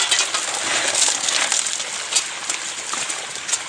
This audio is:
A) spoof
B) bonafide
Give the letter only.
B